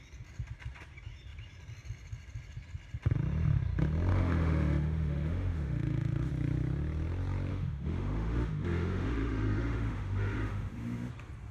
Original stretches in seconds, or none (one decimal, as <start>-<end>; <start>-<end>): 0.0-4.1; 6.3-7.5; 11.1-11.5